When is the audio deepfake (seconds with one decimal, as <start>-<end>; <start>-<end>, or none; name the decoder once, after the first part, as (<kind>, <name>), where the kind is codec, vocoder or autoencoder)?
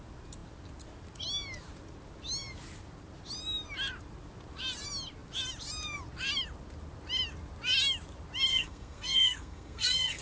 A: 8.5-10.2 (codec, SNAC)